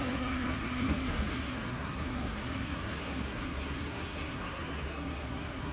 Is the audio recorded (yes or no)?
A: no